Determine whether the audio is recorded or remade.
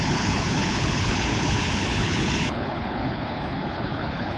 remade